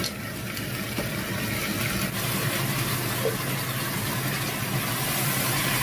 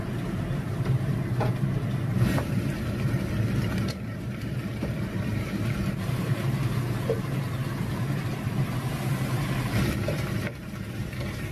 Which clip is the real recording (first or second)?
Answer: first